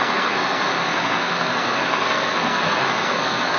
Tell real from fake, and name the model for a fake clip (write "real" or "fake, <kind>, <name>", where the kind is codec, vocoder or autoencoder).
fake, codec, SNAC